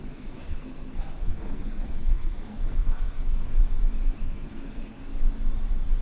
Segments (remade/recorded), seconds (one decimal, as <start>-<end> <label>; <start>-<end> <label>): 0.0-3.6 remade; 3.6-4.2 recorded; 4.2-5.0 remade; 5.0-6.0 recorded